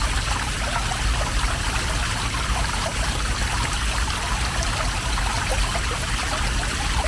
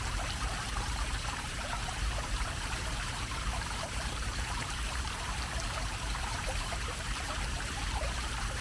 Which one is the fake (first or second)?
second